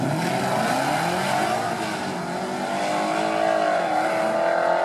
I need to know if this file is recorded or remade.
recorded